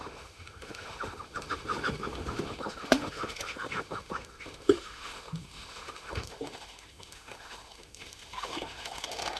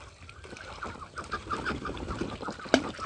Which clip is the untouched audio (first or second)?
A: second